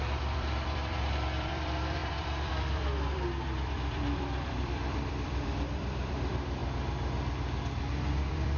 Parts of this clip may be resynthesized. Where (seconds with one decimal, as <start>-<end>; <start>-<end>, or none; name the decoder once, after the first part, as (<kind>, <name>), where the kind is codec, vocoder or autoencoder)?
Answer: 0.0-6.6 (vocoder, BigVGAN v2); 7.7-8.6